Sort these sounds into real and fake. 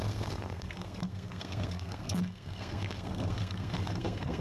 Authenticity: fake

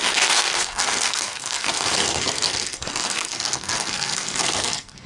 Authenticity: fake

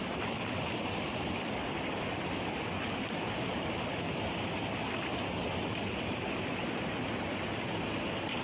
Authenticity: real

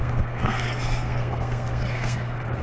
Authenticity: fake